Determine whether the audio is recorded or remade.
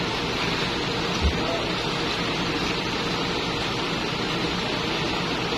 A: recorded